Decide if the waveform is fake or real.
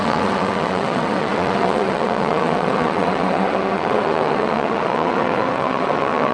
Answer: fake